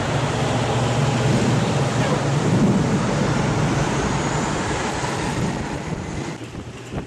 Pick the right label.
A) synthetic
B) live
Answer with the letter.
A